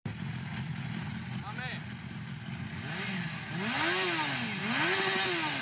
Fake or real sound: real